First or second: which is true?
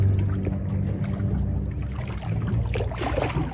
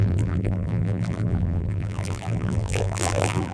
first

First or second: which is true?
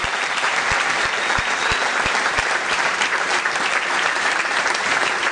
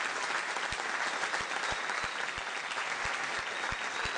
second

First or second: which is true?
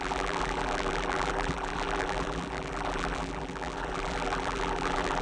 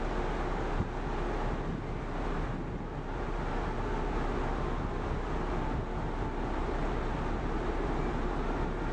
second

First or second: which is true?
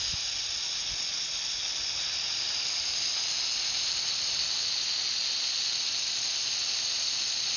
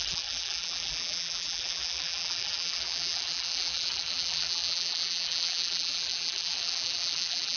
first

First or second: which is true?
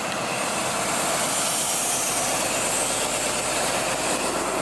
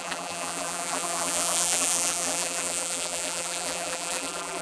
first